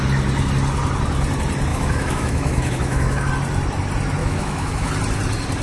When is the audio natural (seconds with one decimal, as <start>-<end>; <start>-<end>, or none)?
0.0-1.7; 3.3-4.2; 4.9-5.6